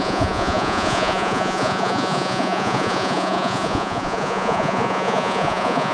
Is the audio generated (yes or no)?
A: yes